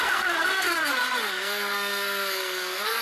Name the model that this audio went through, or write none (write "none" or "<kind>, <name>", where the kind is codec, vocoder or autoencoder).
codec, SNAC